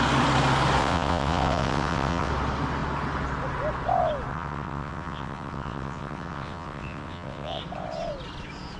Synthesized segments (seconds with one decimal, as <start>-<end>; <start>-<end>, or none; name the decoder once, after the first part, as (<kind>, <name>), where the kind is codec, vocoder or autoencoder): 0.8-2.3 (vocoder, WaveNeXt); 4.3-7.6